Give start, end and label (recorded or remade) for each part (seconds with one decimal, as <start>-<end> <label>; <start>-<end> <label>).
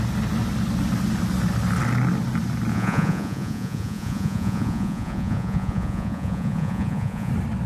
0.0-2.7 recorded; 2.7-7.3 remade; 7.3-7.7 recorded